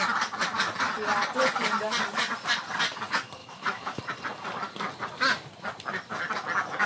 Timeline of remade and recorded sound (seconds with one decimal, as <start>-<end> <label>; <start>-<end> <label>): 0.0-3.4 recorded; 3.4-4.0 remade; 4.0-6.9 recorded